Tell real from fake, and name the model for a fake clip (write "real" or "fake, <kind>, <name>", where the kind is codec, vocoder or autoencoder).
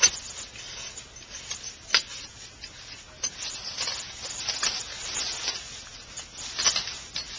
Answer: real